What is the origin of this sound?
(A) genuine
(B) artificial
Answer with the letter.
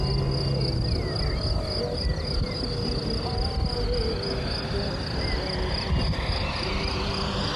A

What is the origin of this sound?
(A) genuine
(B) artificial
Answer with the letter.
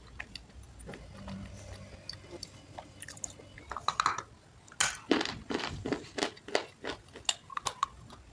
A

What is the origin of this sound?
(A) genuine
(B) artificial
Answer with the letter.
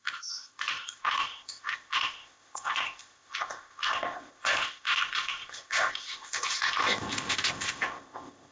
B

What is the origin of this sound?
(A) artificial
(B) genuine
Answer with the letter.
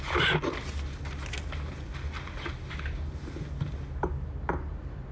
B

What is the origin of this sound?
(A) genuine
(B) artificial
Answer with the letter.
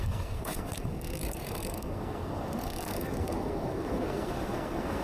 B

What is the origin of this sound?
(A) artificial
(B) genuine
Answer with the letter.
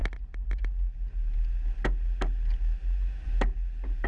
B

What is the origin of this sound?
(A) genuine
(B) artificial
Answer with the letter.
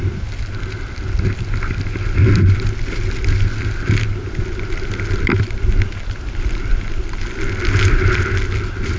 A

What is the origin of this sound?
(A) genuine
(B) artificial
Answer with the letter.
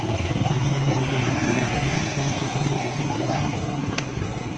B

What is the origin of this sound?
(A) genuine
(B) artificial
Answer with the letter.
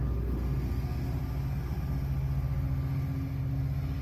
A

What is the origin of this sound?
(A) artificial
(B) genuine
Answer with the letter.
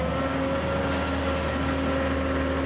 B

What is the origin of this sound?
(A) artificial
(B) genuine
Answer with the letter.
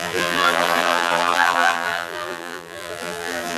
A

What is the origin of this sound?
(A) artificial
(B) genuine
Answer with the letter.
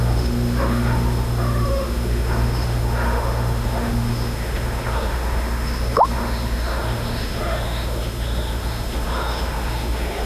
A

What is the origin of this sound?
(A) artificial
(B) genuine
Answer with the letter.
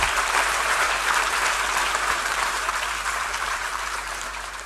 A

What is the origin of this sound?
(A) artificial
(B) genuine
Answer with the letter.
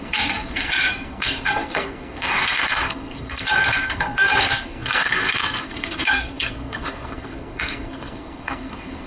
A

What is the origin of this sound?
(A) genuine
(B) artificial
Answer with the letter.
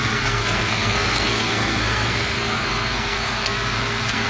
B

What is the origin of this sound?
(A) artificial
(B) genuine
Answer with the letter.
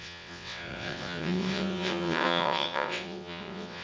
A